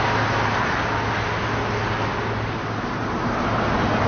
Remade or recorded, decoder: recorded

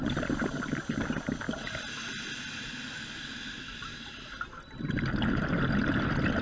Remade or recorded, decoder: recorded